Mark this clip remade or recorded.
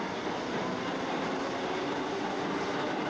recorded